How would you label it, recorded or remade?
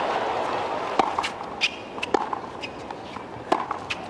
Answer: recorded